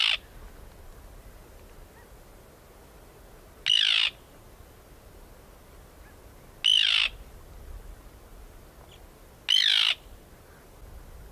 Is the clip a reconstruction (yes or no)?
no